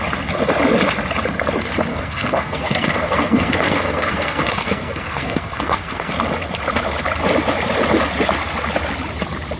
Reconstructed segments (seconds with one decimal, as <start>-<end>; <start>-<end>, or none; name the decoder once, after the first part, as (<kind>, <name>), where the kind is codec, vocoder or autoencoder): 1.9-6.1 (codec, SNAC)